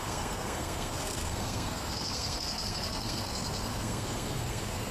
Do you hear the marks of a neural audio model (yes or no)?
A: yes